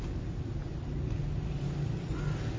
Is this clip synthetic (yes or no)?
no